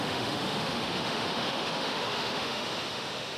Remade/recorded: remade